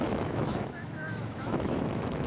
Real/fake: fake